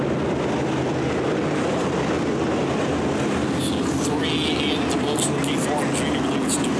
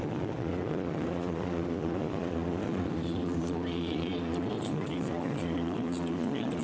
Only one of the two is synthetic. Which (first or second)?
second